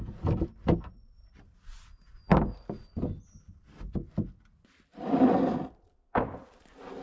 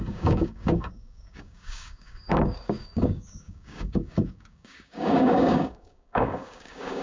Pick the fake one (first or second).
second